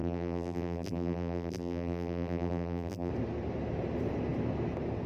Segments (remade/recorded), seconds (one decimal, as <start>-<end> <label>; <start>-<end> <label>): 0.0-3.1 remade; 3.1-5.1 recorded